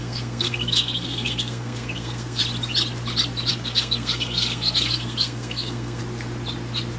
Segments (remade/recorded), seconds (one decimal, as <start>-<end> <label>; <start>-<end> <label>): 0.0-2.4 remade; 2.4-3.5 recorded; 3.5-6.0 remade; 6.0-7.0 recorded